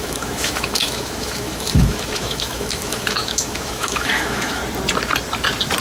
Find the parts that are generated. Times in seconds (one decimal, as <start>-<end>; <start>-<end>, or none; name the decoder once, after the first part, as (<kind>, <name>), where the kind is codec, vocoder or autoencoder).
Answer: 0.0-4.6 (autoencoder, DAC-VAE)